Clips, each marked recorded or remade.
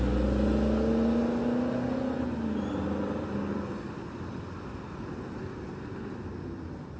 recorded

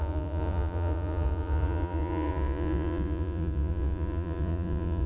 remade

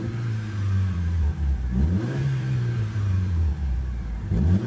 remade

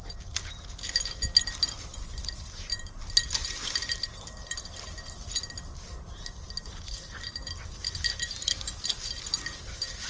recorded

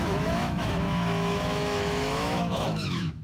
remade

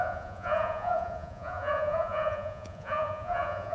remade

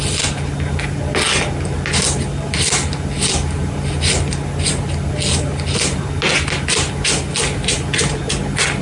recorded